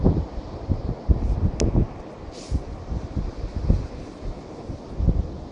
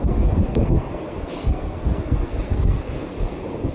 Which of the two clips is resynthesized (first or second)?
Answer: second